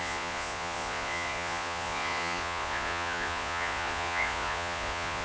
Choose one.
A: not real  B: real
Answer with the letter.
A